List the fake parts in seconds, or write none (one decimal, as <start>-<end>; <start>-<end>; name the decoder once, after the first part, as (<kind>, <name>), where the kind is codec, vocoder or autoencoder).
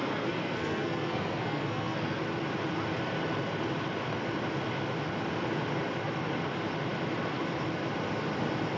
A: 0.0-2.2 (codec, SNAC)